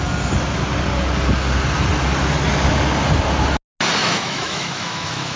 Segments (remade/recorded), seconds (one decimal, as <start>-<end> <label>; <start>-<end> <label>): 0.0-4.0 recorded; 4.0-5.4 remade